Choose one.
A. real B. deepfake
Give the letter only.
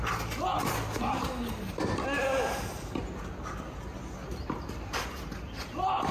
A